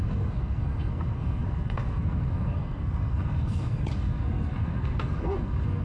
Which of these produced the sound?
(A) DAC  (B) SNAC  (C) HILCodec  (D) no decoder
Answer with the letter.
B